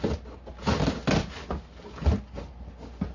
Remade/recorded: recorded